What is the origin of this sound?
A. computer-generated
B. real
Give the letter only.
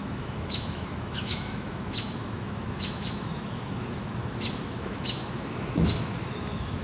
A